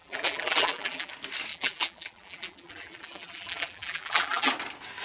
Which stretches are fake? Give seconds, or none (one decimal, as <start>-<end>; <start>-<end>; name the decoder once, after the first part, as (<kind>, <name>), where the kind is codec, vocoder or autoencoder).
0.0-1.1 (vocoder, BigVGAN v2); 1.5-4.5